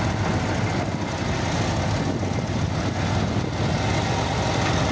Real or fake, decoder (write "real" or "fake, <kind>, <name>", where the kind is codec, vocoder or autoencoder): real